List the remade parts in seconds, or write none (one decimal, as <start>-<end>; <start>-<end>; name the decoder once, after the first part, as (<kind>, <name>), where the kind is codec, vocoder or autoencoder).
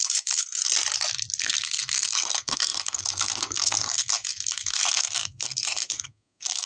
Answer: 0.0-0.6 (codec, SNAC); 1.4-6.7